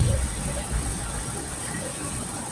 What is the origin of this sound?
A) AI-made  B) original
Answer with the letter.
A